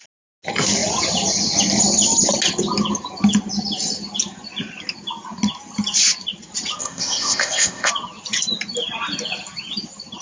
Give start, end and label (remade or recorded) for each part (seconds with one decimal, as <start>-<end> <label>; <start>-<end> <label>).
0.0-6.8 recorded; 6.8-7.9 remade; 7.9-10.2 recorded